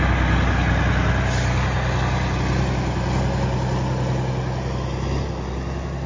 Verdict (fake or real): real